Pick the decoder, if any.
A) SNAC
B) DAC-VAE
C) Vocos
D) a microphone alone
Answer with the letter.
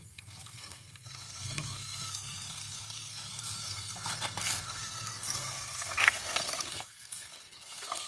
A